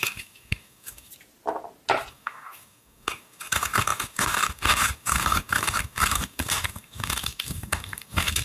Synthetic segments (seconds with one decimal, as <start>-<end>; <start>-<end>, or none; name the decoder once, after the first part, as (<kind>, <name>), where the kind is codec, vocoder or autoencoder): 0.0-1.1 (codec, DAC); 2.1-8.4